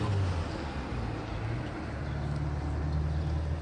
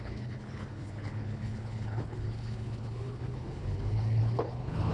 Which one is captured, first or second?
first